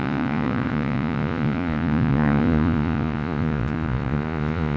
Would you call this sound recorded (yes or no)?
no